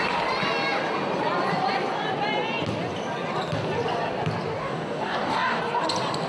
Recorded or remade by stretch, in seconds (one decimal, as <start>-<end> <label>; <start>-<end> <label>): 0.0-4.6 recorded; 4.6-5.6 remade; 5.6-6.3 recorded